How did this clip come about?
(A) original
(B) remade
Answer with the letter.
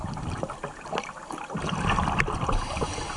A